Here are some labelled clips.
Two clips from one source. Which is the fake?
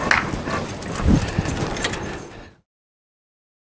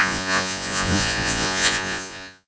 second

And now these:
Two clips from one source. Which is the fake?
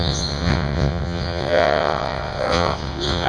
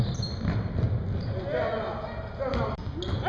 first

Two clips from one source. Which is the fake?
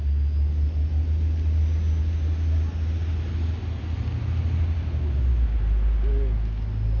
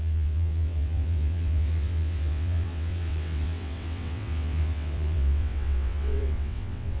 second